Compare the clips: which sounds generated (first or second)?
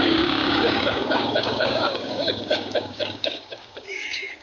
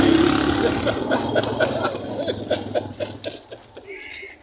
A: first